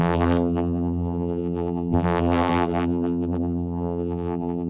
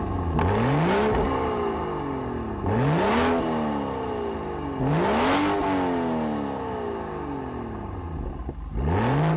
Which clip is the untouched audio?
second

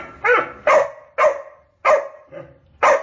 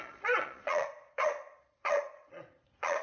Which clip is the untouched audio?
first